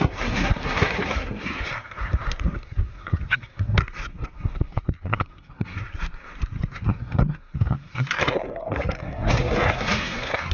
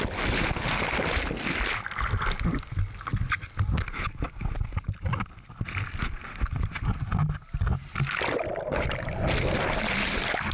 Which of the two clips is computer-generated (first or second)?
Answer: first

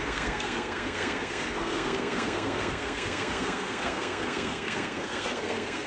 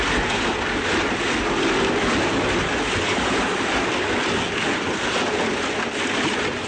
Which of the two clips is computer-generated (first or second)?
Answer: first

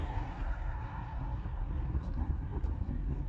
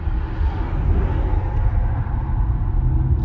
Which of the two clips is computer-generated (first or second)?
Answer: first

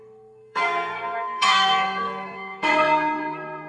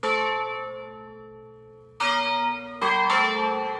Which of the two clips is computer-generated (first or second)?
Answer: first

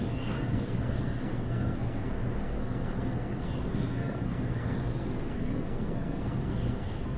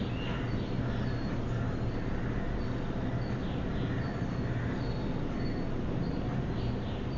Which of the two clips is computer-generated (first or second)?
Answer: first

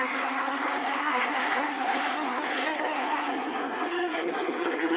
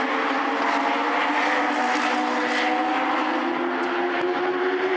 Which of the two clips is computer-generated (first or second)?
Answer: first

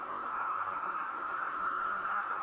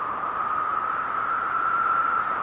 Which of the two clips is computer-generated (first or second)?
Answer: first